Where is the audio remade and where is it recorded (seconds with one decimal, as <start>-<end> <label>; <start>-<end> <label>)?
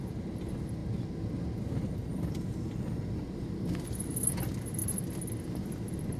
0.0-6.2 recorded